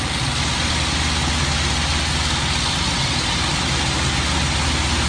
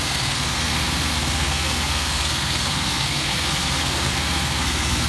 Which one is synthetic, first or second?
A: second